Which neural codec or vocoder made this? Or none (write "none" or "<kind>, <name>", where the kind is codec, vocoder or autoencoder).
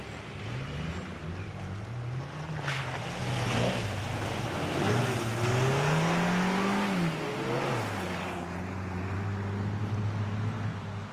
none